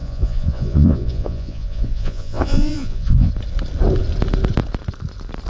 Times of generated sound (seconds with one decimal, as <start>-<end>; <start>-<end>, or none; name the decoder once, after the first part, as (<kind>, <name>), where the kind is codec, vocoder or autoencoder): 0.0-3.3 (vocoder, Vocos)

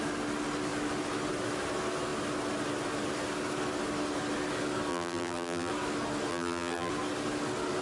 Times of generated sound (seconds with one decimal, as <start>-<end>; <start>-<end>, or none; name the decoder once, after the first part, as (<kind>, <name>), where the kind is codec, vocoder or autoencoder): 4.9-5.7 (vocoder, BigVGAN v2); 6.3-6.9